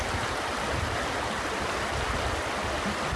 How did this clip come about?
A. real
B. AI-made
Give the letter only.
A